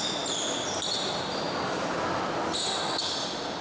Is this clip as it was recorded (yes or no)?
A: yes